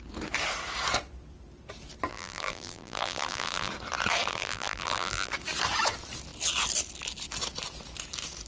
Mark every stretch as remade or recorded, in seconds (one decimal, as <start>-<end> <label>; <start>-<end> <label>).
0.0-2.1 recorded; 2.1-3.7 remade; 3.7-4.3 recorded; 4.3-5.3 remade; 5.3-8.5 recorded